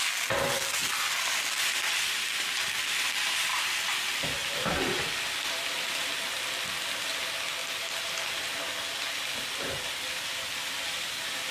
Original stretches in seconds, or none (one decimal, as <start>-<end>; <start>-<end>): 0.8-1.4; 7.6-9.4